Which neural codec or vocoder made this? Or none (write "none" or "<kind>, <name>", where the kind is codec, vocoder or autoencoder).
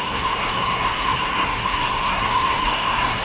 codec, SNAC